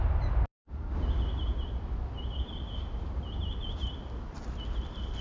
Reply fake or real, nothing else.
real